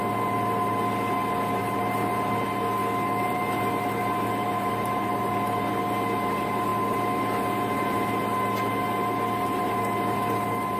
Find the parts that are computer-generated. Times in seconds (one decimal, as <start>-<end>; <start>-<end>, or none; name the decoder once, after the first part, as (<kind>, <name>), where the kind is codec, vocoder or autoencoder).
none